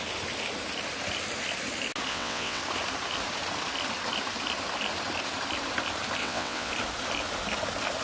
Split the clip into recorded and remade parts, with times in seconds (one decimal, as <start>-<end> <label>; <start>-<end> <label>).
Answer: 0.0-2.1 recorded; 2.1-2.6 remade; 2.6-6.2 recorded; 6.2-6.7 remade; 6.7-8.0 recorded